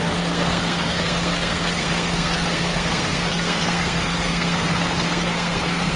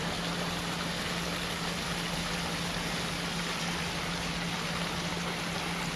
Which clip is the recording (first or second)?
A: second